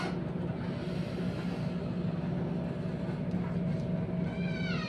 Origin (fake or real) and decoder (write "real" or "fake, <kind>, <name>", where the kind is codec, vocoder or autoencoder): real